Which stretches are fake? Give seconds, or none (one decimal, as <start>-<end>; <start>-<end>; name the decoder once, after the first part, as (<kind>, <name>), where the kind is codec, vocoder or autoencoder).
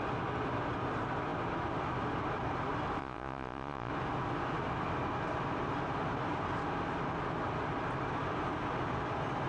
3.0-3.9 (vocoder, Vocos)